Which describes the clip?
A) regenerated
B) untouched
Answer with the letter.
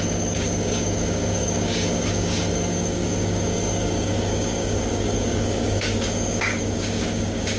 A